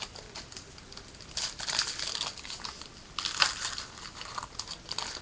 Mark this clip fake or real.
real